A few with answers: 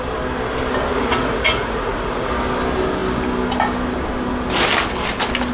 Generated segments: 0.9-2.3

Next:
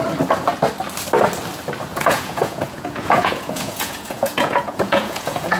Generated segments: 1.9-5.6